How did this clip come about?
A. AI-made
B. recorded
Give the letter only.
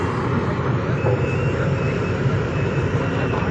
A